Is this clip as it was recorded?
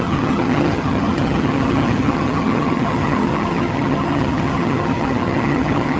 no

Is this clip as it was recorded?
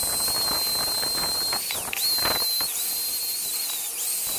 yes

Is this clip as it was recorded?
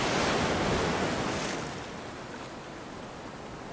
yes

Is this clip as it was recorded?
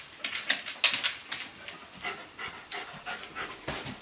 yes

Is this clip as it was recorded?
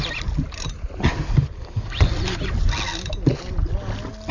yes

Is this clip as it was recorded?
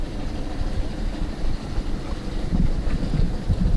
no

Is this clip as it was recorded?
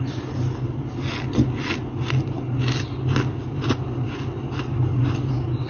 yes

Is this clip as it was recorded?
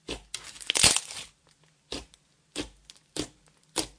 yes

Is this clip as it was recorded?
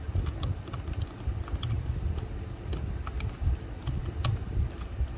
yes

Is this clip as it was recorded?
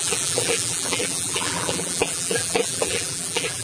no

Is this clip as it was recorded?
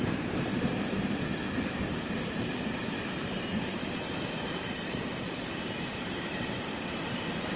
no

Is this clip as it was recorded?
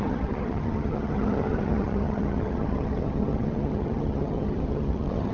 no